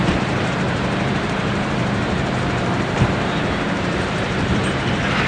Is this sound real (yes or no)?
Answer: no